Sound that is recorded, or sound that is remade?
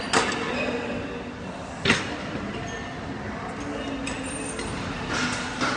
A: recorded